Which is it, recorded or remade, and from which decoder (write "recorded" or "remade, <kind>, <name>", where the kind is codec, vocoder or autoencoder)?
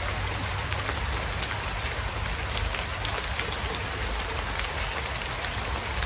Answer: recorded